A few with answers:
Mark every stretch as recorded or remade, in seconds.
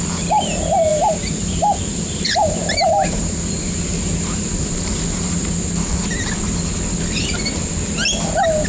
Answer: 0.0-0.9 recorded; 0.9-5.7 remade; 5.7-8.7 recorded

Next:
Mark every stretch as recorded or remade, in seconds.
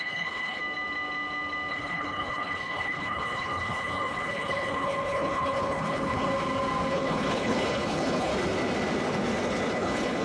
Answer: 0.0-0.6 remade; 0.6-1.7 recorded; 1.7-6.3 remade; 6.3-6.9 recorded; 6.9-8.3 remade; 8.3-9.7 recorded; 9.7-10.2 remade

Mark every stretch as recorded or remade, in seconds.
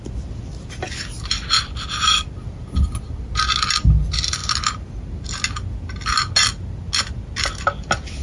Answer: 0.0-8.2 recorded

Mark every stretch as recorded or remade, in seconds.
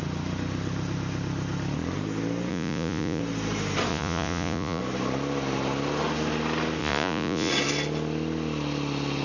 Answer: 0.0-2.5 recorded; 2.5-3.2 remade; 3.2-3.9 recorded; 3.9-4.8 remade; 4.8-6.8 recorded; 6.8-7.5 remade; 7.5-9.2 recorded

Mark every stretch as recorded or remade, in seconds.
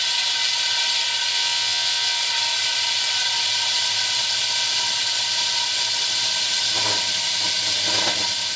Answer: 0.0-1.3 recorded; 1.3-2.2 remade; 2.2-8.6 recorded